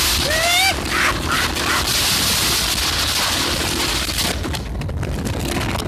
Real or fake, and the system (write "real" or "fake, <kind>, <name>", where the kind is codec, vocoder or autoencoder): real